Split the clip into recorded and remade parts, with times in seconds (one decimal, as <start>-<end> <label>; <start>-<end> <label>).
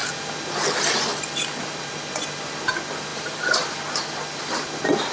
0.0-1.1 recorded; 1.1-1.8 remade; 1.8-3.1 recorded; 3.1-3.8 remade; 3.8-5.1 recorded